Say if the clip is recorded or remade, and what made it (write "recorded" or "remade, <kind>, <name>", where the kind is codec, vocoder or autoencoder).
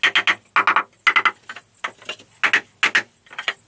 recorded